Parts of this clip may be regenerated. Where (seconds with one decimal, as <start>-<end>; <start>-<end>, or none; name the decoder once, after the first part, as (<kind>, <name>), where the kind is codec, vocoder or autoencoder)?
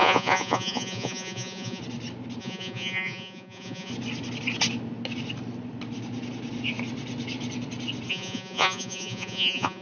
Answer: 0.0-1.8 (vocoder, Vocos); 2.4-3.9; 8.1-9.8